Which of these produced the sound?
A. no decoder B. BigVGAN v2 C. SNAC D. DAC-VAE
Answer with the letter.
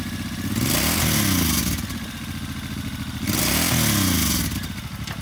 A